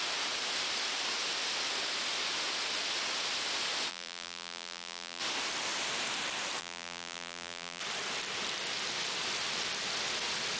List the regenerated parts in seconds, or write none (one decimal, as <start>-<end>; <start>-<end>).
3.9-5.2; 6.6-7.8